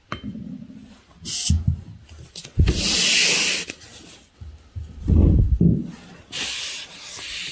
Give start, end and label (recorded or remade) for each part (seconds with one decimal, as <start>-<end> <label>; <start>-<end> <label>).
0.0-7.5 recorded